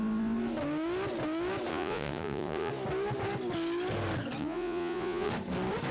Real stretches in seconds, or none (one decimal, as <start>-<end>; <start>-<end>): 0.0-1.7; 2.7-4.4; 5.3-5.9